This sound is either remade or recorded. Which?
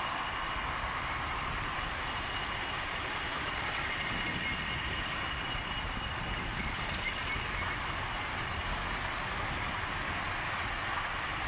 recorded